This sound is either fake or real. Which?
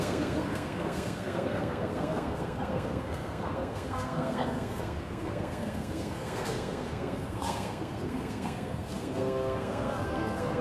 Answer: fake